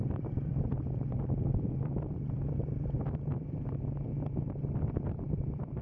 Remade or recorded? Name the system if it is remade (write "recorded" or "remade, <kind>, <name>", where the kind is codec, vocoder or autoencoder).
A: remade, vocoder, BigVGAN v2